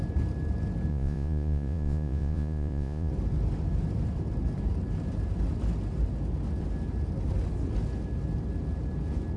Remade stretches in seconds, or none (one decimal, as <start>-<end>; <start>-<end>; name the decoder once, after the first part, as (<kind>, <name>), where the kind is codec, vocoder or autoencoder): 0.9-3.1 (vocoder, Vocos)